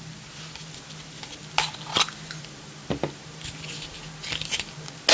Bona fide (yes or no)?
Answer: yes